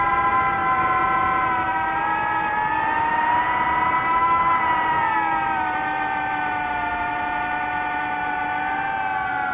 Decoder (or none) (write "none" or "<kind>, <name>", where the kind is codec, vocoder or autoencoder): none